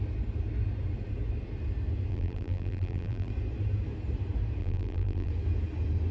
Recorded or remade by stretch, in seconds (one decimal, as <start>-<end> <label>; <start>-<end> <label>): 0.0-2.1 recorded; 2.1-3.3 remade; 3.3-4.6 recorded; 4.6-5.3 remade; 5.3-6.1 recorded